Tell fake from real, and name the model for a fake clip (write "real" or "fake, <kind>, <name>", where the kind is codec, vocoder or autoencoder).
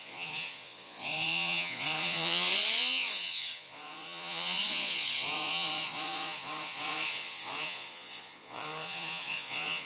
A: fake, vocoder, Vocos